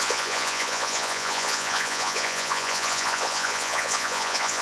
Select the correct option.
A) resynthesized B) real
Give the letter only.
A